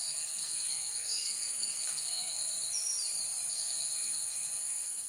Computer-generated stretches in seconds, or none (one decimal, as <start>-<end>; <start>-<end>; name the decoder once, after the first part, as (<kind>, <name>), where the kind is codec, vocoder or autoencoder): 0.0-2.5 (codec, SNAC); 3.5-5.1

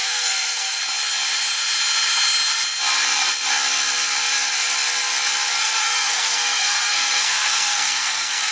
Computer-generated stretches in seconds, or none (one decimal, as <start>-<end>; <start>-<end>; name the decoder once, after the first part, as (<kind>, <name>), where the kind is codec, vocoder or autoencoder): 0.0-0.8 (codec, SNAC); 5.6-8.5

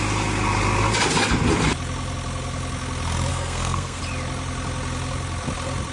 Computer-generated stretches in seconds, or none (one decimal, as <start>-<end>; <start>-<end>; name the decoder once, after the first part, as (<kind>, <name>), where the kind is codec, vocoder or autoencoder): 3.3-4.0 (codec, SNAC)

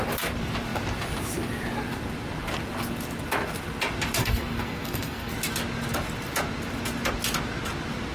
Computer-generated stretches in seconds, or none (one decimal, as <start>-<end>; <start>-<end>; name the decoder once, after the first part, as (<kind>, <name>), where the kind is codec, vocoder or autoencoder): 4.2-5.3 (codec, SNAC)